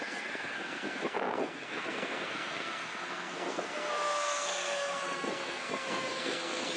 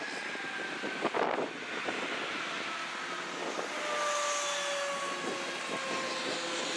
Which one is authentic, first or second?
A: second